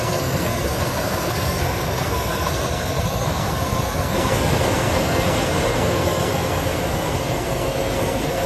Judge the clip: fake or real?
fake